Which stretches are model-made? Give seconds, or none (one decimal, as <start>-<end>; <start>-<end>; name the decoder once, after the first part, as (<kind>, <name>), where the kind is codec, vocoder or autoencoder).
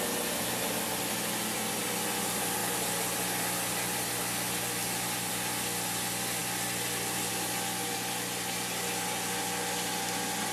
none